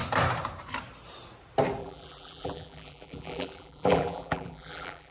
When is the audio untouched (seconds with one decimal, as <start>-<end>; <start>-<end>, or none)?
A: 0.0-1.8